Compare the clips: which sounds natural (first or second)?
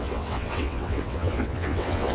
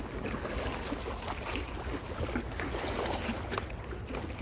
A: second